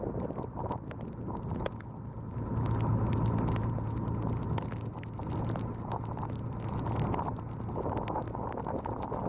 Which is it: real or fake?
real